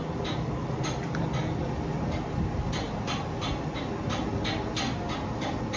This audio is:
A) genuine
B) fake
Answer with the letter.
A